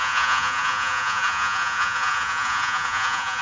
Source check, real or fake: fake